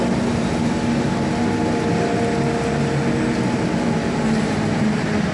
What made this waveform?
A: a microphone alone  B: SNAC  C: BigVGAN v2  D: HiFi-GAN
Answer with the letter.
A